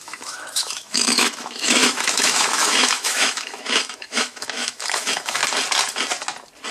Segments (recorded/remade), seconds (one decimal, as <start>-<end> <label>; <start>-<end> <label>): 0.0-5.4 remade; 5.4-6.7 recorded